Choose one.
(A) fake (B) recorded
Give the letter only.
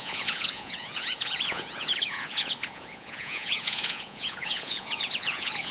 A